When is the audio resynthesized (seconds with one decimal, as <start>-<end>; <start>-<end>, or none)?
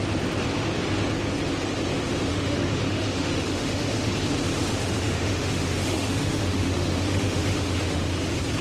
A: 2.3-4.1; 4.7-8.0